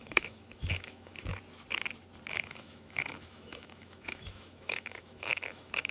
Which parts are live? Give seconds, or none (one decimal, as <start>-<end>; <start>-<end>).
1.3-2.3